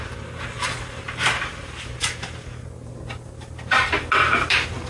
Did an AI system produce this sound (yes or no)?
no